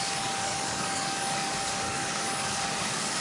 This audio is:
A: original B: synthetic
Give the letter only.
B